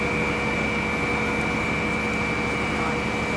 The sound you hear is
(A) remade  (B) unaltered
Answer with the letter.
B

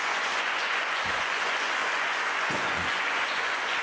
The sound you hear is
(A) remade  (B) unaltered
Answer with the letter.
A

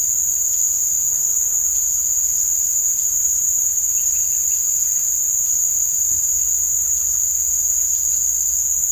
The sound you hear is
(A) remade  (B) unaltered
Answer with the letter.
B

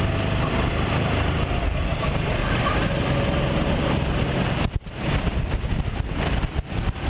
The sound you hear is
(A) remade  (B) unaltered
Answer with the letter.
B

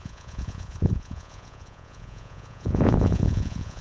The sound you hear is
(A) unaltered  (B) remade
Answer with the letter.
B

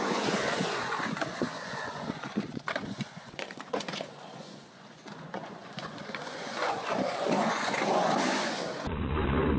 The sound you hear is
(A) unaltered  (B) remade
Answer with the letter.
B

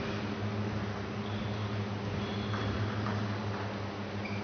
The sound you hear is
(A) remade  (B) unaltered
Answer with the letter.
B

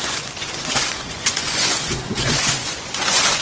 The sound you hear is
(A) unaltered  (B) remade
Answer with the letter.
B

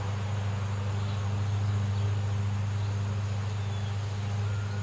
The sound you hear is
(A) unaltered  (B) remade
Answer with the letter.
A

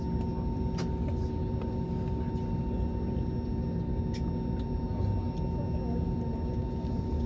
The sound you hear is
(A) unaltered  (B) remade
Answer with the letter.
A